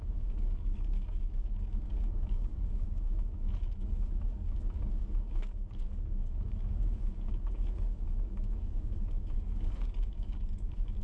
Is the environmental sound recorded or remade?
remade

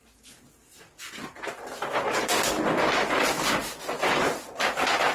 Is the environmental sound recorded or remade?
recorded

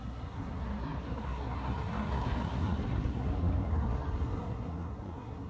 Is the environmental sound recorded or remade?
remade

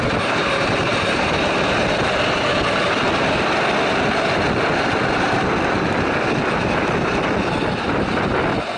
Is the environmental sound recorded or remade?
recorded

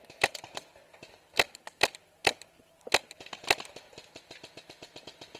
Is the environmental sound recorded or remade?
recorded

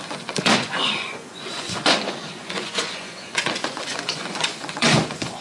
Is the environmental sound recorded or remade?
remade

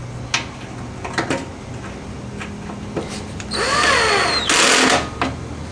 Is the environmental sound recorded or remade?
recorded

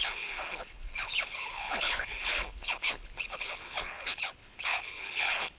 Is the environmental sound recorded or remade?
remade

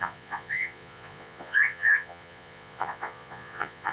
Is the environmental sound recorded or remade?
remade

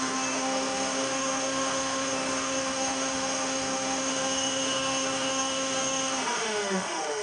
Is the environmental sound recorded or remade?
remade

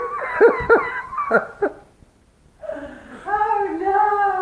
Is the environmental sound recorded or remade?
recorded